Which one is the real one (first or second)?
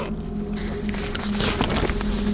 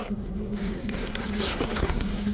first